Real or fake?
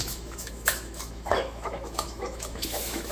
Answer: fake